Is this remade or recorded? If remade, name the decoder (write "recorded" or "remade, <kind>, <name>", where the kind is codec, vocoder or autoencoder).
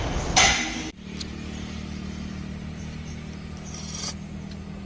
recorded